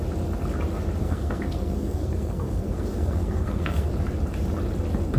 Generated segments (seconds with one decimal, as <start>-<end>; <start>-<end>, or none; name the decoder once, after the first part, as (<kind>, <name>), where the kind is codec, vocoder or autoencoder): 1.0-3.9 (codec, SNAC)